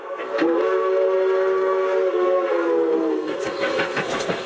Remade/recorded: remade